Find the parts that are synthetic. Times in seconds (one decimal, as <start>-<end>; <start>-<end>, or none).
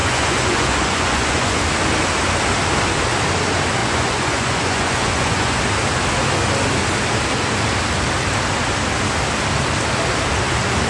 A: 0.0-1.6; 3.8-5.6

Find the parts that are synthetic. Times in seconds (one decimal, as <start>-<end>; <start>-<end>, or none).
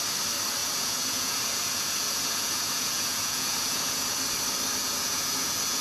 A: 0.6-4.1; 4.8-5.8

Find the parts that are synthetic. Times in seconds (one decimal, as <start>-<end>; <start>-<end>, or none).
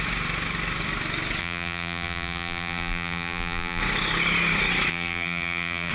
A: 1.4-3.8; 4.9-5.9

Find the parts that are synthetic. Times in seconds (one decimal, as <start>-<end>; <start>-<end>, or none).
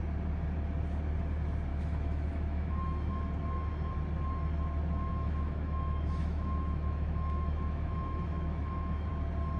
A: 1.7-3.1; 5.1-9.1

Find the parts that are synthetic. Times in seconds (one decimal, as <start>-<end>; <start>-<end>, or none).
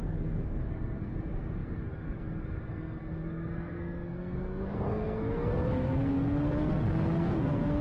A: 0.0-7.8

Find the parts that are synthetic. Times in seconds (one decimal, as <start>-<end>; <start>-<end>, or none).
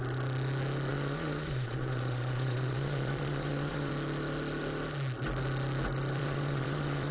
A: 0.9-3.9; 6.2-7.1